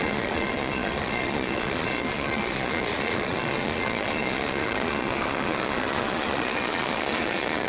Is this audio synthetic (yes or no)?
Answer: yes